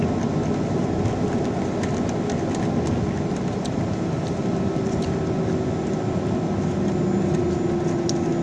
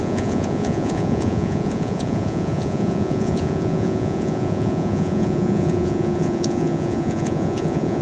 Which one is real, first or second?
first